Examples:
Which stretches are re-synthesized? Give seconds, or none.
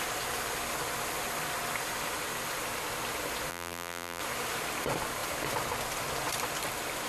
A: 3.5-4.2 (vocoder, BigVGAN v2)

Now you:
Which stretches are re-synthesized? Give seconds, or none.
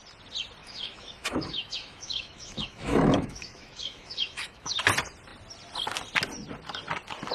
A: 0.6-4.7 (autoencoder, DAC-VAE)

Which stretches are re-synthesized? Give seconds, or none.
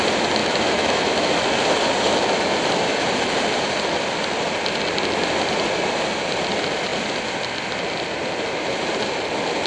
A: 0.4-1.4 (autoencoder, DAC-VAE)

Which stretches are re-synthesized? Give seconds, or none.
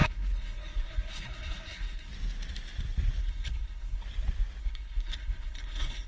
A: 0.0-2.1 (codec, HILCodec); 3.2-4.0; 4.6-6.1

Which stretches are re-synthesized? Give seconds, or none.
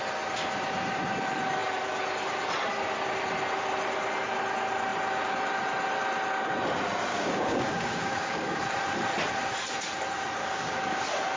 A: 7.1-8.6 (codec, DAC); 10.4-11.0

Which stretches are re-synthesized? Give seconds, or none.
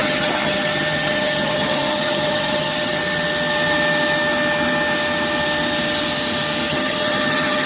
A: 0.0-3.0 (vocoder, HiFi-GAN); 6.7-7.7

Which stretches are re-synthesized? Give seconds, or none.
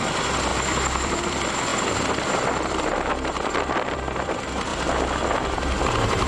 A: 0.0-6.3 (vocoder, BigVGAN v2)